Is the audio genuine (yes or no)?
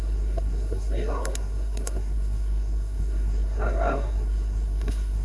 no